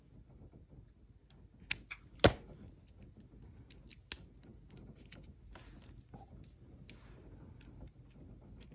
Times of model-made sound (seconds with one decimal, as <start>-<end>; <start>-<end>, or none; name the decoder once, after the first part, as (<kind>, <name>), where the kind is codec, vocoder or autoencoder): none